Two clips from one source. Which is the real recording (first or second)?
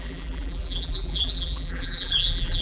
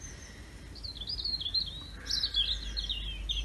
second